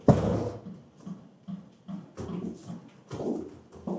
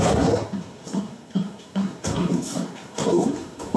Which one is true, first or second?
first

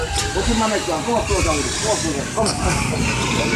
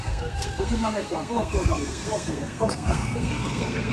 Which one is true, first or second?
first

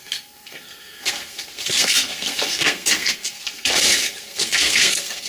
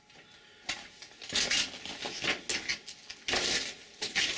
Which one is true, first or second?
second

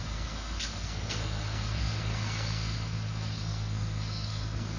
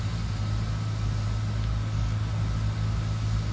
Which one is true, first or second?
second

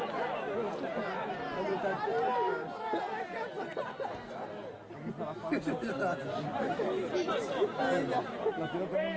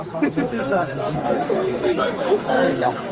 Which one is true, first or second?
first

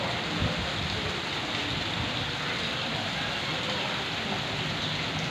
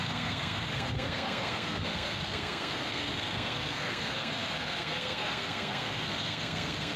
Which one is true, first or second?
first